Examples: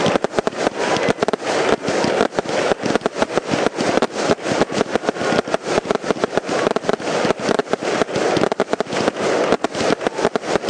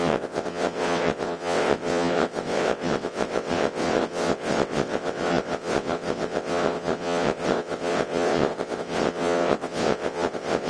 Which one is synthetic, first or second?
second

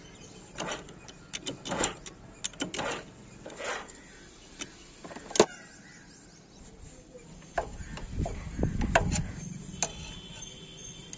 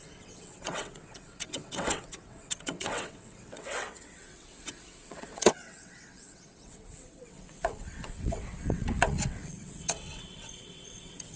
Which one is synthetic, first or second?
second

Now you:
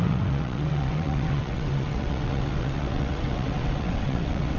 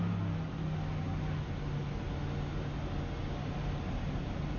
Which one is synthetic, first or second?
first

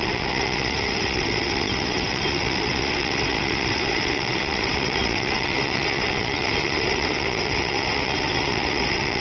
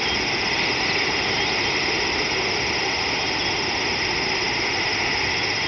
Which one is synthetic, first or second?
first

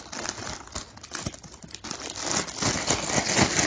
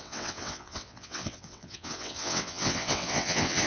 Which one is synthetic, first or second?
second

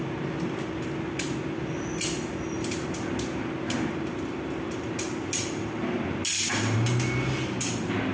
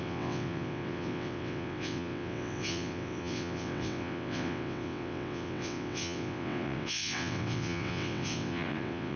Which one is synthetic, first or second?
second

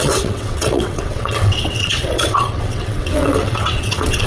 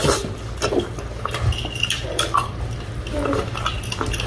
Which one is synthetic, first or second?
first